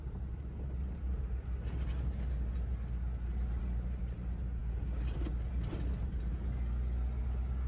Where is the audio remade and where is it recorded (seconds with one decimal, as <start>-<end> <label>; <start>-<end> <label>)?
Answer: 0.0-7.7 recorded